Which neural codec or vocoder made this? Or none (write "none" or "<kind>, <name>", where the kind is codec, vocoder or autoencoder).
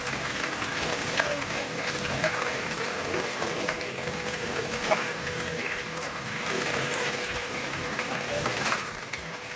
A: codec, DAC